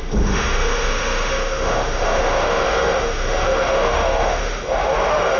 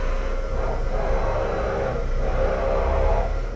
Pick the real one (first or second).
second